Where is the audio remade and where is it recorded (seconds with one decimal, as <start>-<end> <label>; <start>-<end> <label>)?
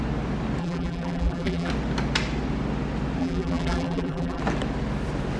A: 0.0-0.6 recorded; 0.6-1.7 remade; 1.7-3.2 recorded; 3.2-4.4 remade; 4.4-5.4 recorded